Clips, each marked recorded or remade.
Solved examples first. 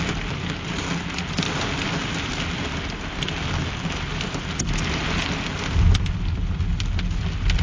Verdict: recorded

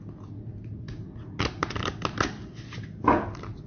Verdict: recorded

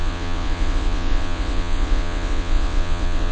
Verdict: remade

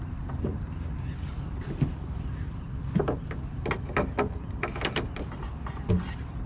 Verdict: recorded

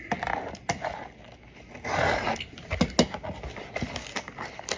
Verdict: recorded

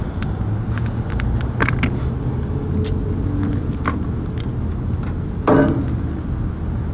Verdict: recorded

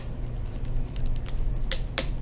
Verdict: recorded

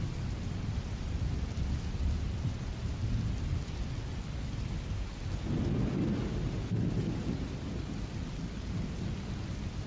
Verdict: recorded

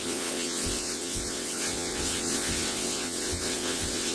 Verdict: remade